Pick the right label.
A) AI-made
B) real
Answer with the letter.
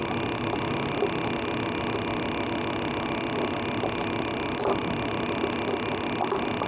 B